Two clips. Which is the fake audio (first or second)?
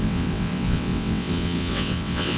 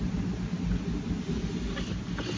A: first